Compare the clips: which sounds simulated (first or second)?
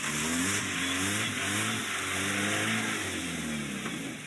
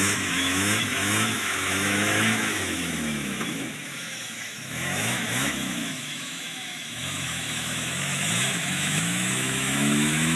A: second